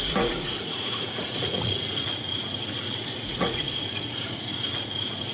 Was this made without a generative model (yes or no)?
no